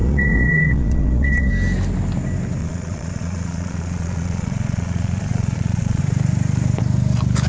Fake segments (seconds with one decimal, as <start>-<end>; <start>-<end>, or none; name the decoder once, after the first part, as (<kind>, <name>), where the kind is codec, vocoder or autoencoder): 0.0-1.5 (vocoder, Vocos); 2.6-6.0